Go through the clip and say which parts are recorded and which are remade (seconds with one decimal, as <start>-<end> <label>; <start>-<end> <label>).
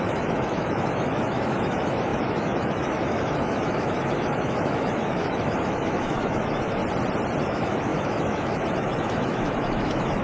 0.0-6.8 remade; 6.8-7.4 recorded; 7.4-10.2 remade